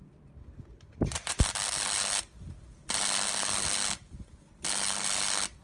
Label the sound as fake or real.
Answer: real